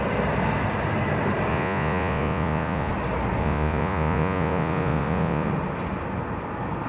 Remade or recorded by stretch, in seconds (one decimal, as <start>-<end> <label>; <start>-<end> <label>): 0.0-1.5 recorded; 1.5-2.9 remade; 2.9-3.4 recorded; 3.4-5.5 remade; 5.5-6.9 recorded